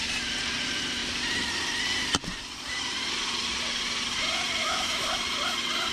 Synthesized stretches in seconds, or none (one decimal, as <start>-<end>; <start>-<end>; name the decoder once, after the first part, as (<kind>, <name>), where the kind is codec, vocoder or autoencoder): 4.6-5.1 (autoencoder, DAC-VAE)